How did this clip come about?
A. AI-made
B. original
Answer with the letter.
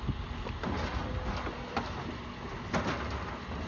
B